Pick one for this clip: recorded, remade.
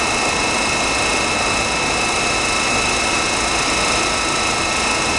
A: recorded